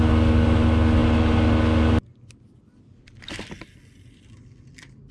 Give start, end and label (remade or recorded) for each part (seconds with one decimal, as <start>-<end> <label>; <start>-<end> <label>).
0.0-5.1 recorded